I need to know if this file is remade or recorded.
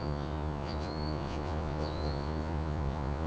remade